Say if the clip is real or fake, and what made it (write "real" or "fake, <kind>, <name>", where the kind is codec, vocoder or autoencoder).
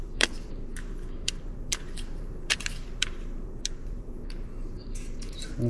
fake, vocoder, BigVGAN v2